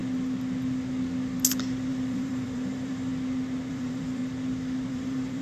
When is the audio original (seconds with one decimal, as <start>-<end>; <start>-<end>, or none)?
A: 0.0-1.9; 3.1-3.7; 4.2-4.9